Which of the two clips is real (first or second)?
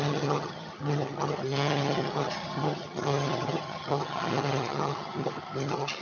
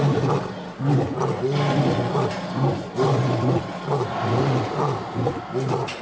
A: second